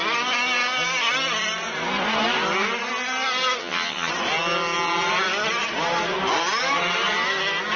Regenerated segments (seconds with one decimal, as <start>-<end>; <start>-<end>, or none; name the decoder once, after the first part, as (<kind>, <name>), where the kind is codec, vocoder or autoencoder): 3.6-4.1 (vocoder, HiFi-GAN)